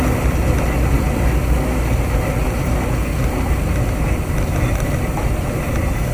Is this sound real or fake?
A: real